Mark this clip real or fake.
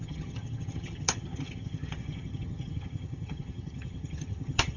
fake